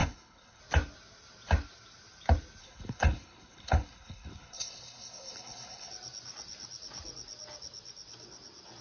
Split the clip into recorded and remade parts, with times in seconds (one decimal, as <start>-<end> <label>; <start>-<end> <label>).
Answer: 0.0-0.6 remade; 0.6-2.6 recorded; 2.6-5.9 remade; 5.9-8.8 recorded